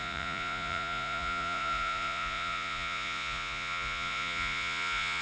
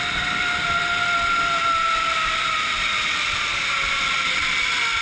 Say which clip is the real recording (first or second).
second